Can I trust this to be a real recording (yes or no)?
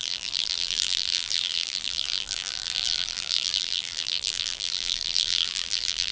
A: no